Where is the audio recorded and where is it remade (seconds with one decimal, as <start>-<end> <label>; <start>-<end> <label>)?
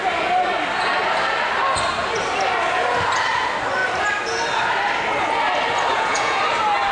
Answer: 0.0-5.9 recorded; 5.9-6.4 remade; 6.4-6.9 recorded